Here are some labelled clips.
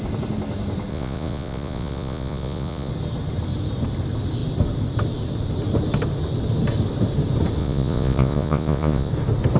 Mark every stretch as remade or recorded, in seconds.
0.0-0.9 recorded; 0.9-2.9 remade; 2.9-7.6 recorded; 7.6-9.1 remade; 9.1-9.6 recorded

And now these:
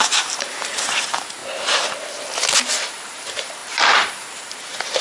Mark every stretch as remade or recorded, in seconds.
0.0-1.4 remade; 1.4-2.9 recorded; 2.9-5.0 remade

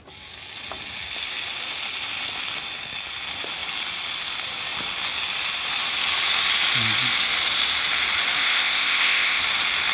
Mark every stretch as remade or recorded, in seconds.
0.0-8.4 recorded; 8.4-9.4 remade; 9.4-9.9 recorded

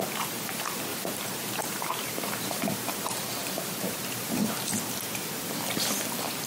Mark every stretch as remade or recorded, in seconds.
0.0-0.9 recorded; 0.9-4.7 remade; 4.7-6.5 recorded